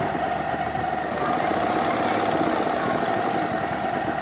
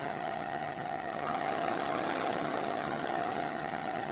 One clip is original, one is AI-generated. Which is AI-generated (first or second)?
second